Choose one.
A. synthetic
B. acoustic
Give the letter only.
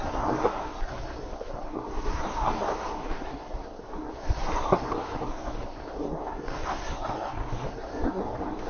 A